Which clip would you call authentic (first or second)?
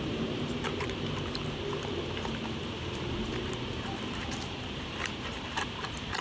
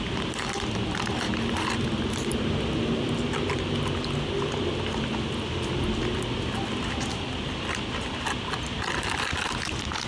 second